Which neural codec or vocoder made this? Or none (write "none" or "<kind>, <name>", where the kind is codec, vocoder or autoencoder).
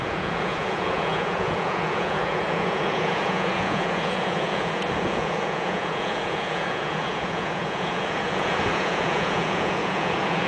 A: vocoder, Vocos